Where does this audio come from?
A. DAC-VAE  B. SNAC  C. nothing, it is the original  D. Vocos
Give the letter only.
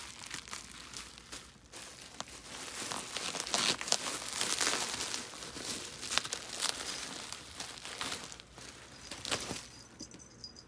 C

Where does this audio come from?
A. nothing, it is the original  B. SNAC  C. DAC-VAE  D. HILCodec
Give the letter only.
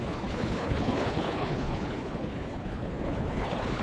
D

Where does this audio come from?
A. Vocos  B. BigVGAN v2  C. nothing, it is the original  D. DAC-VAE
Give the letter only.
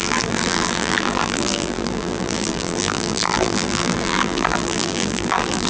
B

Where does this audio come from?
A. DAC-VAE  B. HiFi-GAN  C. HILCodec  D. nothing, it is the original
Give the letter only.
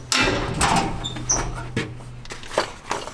D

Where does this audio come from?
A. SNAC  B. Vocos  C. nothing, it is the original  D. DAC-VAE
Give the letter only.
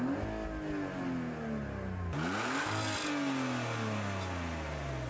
C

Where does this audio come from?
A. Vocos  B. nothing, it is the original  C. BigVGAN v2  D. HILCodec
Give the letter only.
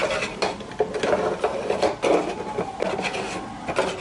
B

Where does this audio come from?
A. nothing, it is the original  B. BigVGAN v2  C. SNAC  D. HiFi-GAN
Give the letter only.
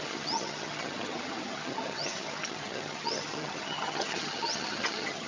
D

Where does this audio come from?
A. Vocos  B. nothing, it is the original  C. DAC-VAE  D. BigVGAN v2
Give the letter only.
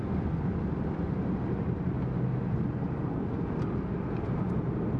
B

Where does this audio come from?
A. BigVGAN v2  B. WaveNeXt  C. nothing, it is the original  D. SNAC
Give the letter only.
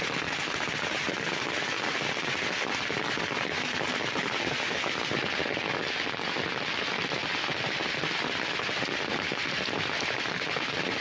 C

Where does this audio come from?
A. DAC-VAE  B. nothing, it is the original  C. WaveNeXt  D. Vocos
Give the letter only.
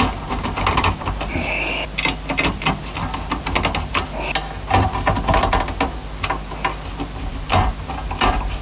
B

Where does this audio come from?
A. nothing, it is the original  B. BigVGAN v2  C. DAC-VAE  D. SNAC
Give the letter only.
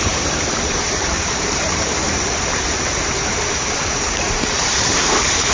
B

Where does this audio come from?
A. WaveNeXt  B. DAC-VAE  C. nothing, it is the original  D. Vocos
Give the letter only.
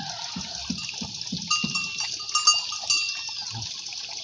C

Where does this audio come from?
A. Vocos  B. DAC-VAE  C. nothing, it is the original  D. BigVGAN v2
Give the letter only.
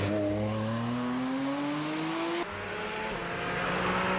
C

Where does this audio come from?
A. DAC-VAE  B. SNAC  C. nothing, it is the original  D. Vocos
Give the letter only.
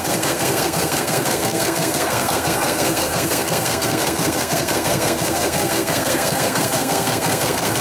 B